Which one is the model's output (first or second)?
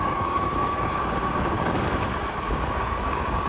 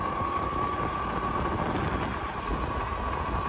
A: first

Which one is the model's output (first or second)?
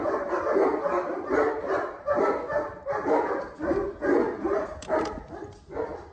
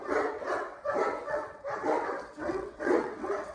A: second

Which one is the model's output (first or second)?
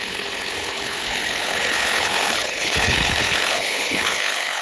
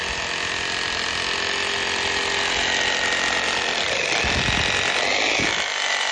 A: first